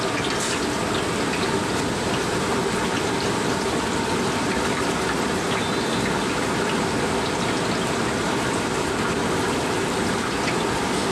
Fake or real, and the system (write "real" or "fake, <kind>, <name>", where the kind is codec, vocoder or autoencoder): real